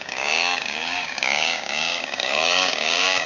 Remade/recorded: remade